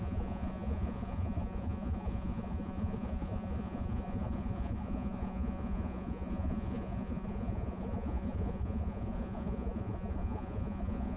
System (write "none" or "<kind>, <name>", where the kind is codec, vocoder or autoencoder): vocoder, Vocos